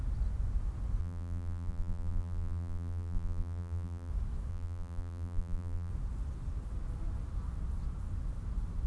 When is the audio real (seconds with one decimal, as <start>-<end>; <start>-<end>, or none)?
0.0-1.0; 4.1-4.5; 5.9-8.9